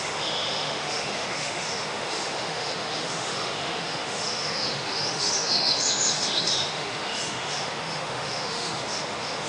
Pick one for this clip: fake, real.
fake